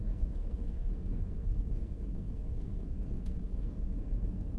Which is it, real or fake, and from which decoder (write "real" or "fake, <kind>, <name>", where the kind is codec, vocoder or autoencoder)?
fake, codec, SNAC